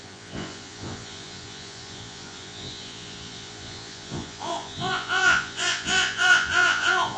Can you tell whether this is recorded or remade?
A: remade